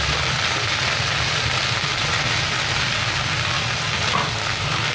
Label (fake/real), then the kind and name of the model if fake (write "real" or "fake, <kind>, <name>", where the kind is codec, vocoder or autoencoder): real